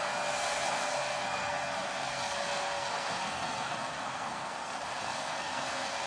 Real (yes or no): no